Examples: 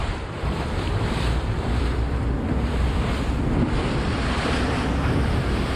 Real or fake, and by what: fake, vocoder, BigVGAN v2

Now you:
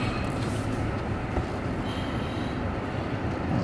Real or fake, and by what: fake, vocoder, BigVGAN v2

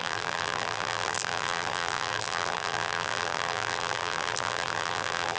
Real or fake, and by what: fake, vocoder, BigVGAN v2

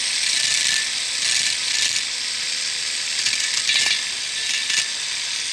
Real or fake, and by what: real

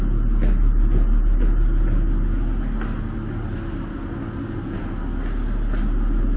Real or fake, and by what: real